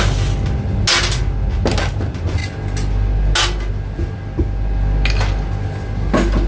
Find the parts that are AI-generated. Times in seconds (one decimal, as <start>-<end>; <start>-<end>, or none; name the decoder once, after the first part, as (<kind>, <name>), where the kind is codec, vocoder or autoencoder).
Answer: none